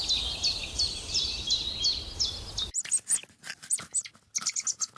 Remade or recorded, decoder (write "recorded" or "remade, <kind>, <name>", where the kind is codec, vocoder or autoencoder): recorded